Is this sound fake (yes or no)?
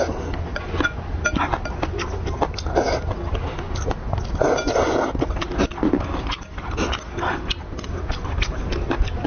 no